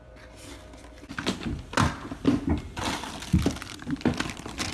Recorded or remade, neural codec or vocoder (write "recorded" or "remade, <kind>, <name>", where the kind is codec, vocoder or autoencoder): recorded